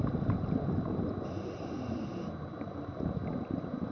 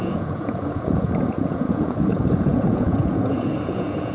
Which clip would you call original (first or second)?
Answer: first